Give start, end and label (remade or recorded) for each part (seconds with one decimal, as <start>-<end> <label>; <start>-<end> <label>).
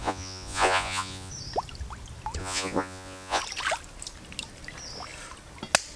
0.0-1.3 remade; 1.3-2.4 recorded; 2.4-3.4 remade; 3.4-6.0 recorded